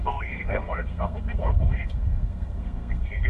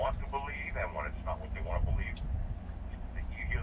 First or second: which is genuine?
second